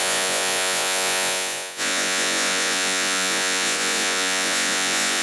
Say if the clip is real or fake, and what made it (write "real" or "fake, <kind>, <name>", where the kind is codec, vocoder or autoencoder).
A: fake, vocoder, Vocos